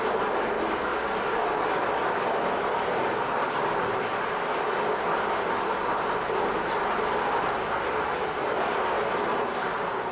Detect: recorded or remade recorded